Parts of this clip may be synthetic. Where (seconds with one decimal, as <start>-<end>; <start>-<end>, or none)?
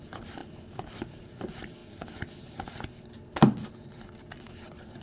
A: 0.0-5.0